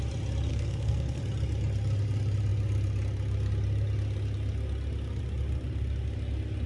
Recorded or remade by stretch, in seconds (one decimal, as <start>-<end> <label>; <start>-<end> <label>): 0.0-0.5 recorded; 0.5-1.2 remade; 1.2-6.7 recorded